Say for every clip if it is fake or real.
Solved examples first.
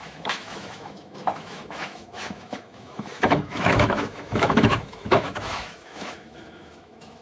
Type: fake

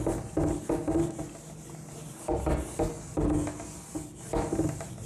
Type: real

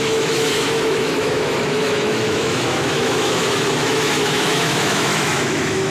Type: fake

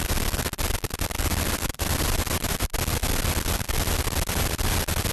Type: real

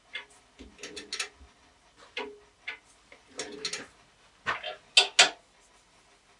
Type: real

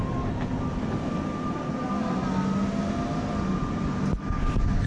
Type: real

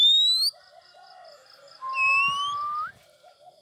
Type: real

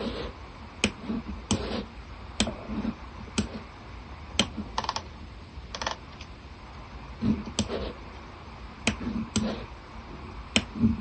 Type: real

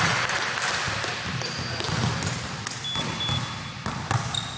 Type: real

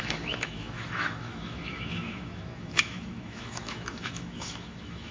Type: fake